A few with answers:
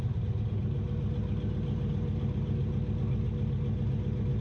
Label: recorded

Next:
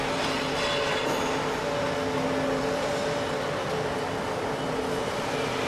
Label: recorded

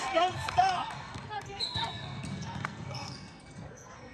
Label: remade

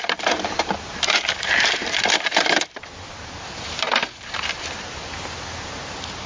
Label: remade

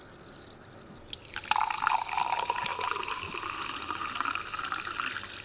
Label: recorded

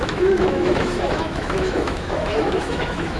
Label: remade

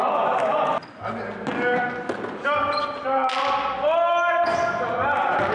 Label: recorded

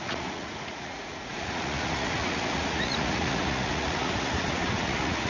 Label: remade